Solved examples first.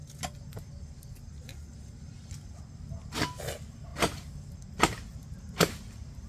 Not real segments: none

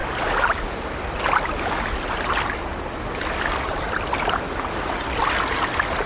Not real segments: 0.0-1.2

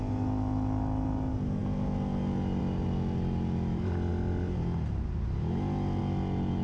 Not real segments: none

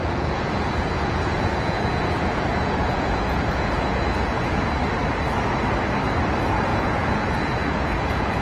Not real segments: 0.0-4.7; 6.7-8.4

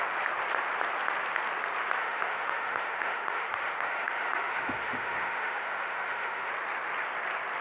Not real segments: 2.0-6.5